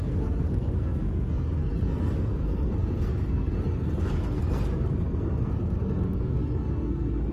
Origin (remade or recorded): remade